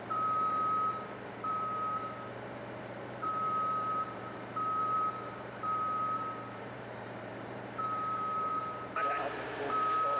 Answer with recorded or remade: remade